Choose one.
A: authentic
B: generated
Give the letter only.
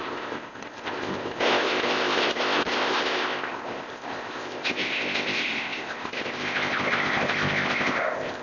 B